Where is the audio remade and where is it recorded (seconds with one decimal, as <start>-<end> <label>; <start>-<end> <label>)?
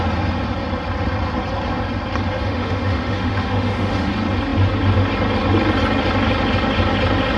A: 0.0-2.4 recorded; 2.4-4.1 remade; 4.1-7.4 recorded